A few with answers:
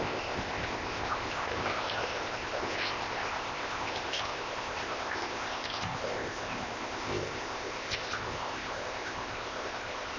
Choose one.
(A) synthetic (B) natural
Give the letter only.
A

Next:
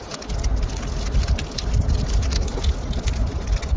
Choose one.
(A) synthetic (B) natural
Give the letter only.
B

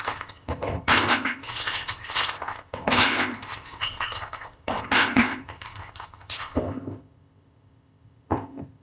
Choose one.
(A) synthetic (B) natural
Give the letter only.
A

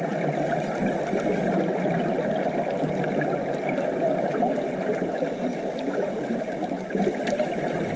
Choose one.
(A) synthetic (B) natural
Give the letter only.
B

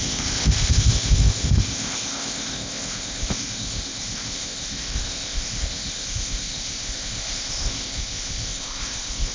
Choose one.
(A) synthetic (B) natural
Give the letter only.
A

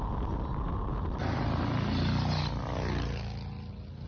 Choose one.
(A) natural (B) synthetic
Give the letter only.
A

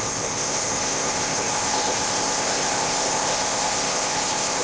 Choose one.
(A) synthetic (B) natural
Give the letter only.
A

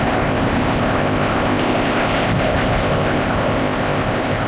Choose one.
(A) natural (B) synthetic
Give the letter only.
B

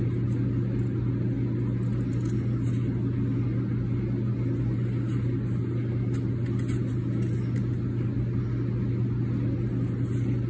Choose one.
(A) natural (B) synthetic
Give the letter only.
A